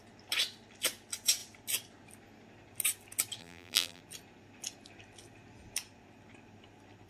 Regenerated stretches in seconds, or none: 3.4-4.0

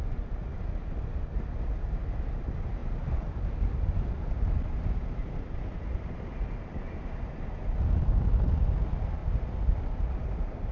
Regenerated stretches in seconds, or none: 2.8-4.6; 9.2-10.7

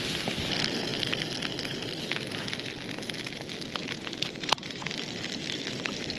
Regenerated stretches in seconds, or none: 3.8-4.9